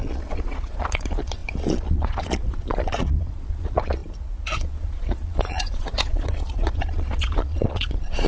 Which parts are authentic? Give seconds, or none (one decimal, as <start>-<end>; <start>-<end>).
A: 4.0-4.5